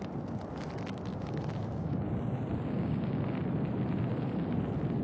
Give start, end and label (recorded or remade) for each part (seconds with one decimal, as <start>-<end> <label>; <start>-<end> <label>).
0.0-1.1 recorded; 1.1-3.2 remade; 3.2-5.0 recorded